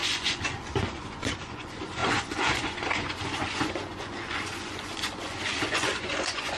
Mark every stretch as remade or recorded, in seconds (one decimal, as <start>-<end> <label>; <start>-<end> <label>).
0.0-6.6 remade